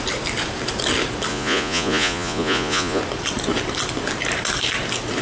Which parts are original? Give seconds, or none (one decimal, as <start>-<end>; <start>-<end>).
0.0-1.3; 3.0-5.2